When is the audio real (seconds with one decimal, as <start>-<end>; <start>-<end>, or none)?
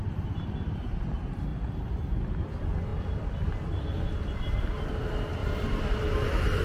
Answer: 0.0-1.5; 2.4-2.9; 4.6-5.4